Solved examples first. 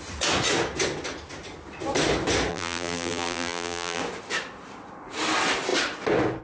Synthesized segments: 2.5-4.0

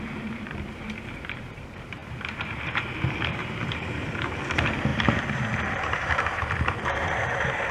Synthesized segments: 0.0-7.7

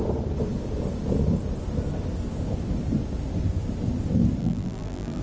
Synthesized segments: 4.4-5.2

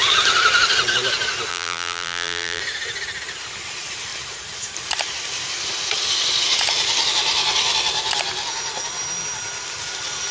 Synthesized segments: 1.5-2.6

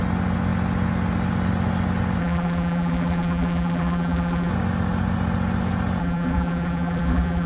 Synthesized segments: 2.2-4.5; 6.0-7.5

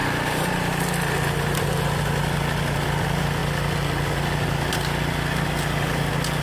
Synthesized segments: 0.0-0.8

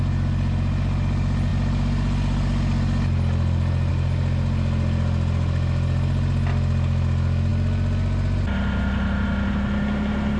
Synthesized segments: none